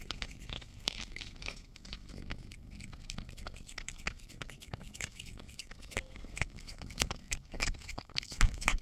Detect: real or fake fake